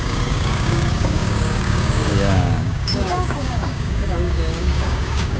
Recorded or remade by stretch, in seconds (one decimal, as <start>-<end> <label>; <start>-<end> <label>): 0.0-5.4 remade